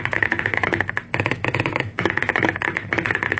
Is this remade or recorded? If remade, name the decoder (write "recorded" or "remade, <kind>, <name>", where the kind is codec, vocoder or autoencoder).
remade, autoencoder, DAC-VAE